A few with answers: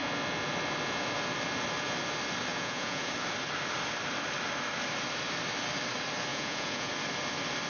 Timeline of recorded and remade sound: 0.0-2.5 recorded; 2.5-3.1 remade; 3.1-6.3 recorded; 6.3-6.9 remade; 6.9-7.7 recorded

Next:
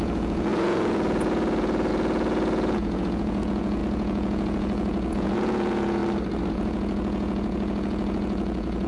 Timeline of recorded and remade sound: 0.0-6.0 remade; 6.0-6.5 recorded; 6.5-8.9 remade

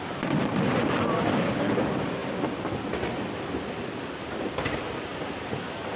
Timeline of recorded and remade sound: 0.0-6.0 recorded

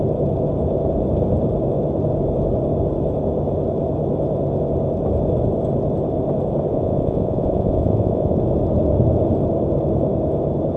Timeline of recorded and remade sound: 0.0-6.7 recorded; 6.7-8.4 remade; 8.4-10.8 recorded